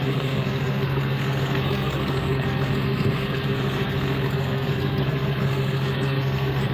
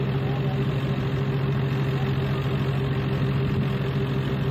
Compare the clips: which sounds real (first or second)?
second